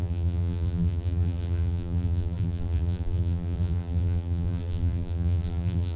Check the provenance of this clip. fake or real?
fake